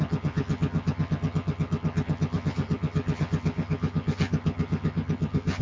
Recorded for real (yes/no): no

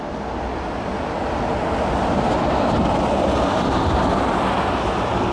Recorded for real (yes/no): yes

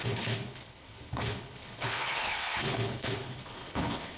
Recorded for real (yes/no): no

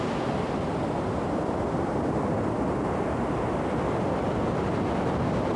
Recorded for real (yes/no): no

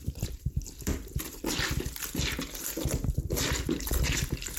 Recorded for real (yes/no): no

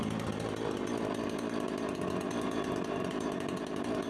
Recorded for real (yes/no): yes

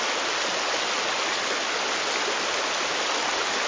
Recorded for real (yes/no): yes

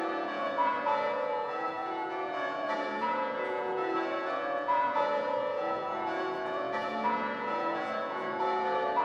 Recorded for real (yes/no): no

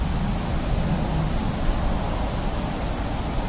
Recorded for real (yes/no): no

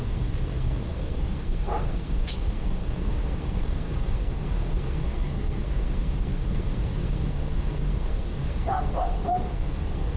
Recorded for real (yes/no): no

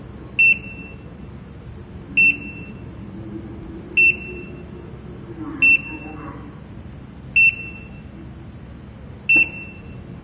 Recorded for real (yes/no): yes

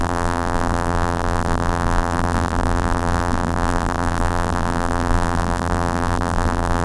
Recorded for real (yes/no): no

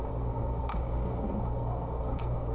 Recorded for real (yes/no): no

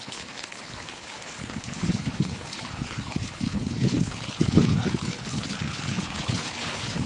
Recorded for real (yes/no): no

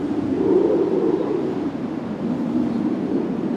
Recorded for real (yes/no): yes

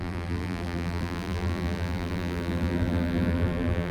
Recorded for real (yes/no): no